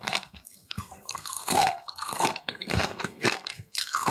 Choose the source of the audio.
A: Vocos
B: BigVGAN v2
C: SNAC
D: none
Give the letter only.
C